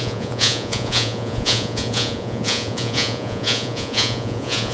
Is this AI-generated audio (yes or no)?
yes